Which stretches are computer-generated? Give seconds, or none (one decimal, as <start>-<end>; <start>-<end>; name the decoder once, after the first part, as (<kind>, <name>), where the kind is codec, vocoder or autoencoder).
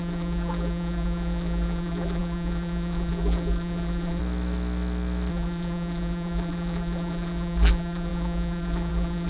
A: 0.0-4.2 (vocoder, BigVGAN v2); 5.3-9.3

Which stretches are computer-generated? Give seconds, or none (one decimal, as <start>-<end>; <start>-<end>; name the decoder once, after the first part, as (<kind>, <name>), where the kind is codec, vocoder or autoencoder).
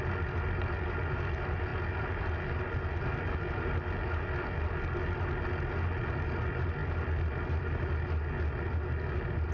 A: none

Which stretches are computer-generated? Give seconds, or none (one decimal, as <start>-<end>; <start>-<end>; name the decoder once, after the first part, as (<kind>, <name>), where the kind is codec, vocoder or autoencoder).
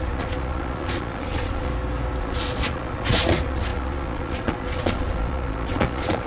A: 0.0-1.7 (vocoder, Vocos); 2.2-6.3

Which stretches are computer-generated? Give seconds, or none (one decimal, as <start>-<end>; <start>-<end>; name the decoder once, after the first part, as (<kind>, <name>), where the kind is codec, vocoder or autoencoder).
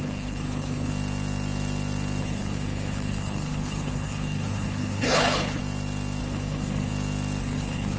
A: 0.0-0.9 (codec, HILCodec); 2.2-5.6; 6.2-6.9; 7.4-8.0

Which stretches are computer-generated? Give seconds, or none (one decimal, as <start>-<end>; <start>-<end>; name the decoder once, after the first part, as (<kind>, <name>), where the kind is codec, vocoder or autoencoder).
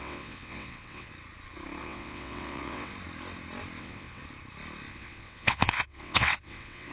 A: 0.0-1.1 (vocoder, WaveNeXt); 1.8-2.9; 3.8-4.2; 4.9-6.9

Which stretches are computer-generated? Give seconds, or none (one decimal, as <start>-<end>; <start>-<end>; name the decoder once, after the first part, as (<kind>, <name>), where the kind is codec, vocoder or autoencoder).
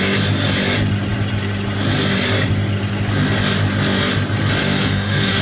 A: 4.6-5.4 (autoencoder, DAC-VAE)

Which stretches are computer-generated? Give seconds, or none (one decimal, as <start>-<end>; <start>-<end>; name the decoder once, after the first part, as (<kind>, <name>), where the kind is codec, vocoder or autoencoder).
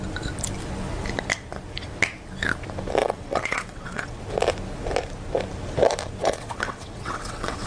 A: 3.0-4.2 (vocoder, WaveNeXt); 6.2-7.7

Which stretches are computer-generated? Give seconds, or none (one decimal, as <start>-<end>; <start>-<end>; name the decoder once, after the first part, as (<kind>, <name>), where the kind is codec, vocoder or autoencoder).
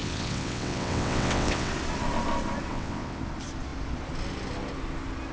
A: 0.0-1.7 (vocoder, WaveNeXt); 2.7-3.2